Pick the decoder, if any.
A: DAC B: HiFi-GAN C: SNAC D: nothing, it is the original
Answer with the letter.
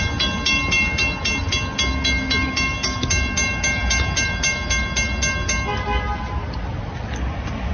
D